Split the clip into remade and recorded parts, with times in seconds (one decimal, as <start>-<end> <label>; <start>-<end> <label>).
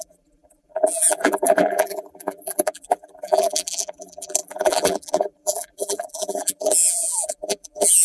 0.0-8.0 remade